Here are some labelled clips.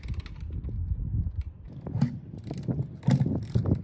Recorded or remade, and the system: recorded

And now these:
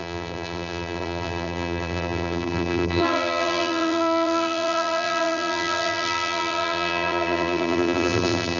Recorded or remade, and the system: remade, vocoder, BigVGAN v2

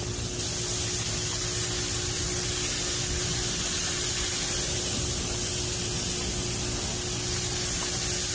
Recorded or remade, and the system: recorded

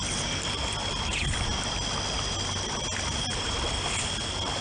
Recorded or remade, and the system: recorded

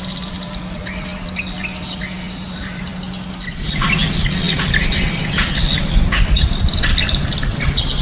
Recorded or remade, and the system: recorded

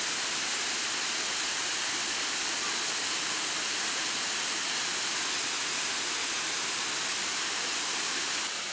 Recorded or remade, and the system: recorded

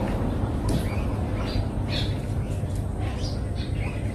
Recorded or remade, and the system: recorded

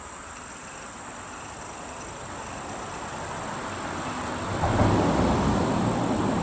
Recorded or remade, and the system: recorded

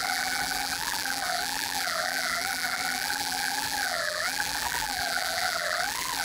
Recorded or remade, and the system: remade, vocoder, BigVGAN v2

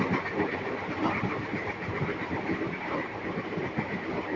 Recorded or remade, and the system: recorded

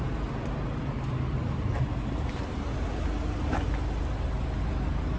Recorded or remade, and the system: recorded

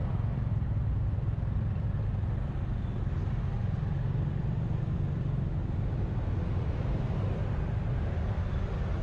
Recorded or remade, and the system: recorded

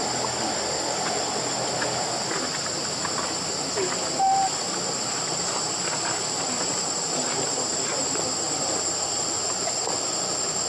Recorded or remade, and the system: recorded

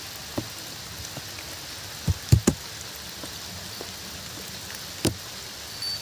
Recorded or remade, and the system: recorded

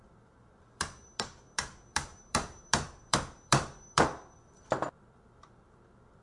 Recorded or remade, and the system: remade, vocoder, BigVGAN v2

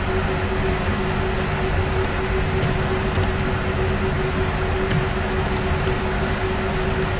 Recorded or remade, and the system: recorded